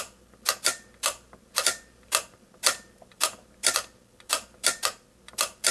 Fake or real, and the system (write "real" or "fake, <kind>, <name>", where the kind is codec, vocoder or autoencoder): fake, vocoder, BigVGAN v2